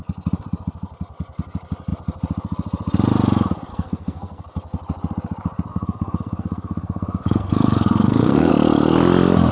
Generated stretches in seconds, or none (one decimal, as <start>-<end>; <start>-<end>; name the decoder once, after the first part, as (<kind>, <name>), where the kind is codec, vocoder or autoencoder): 3.7-4.4 (codec, SNAC); 5.7-8.5